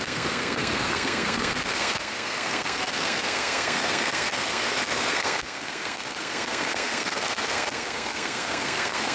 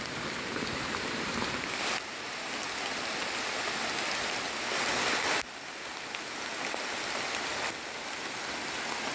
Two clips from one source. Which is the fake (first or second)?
first